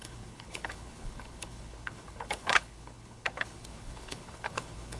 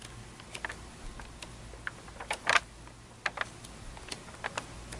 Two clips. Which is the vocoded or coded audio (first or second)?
first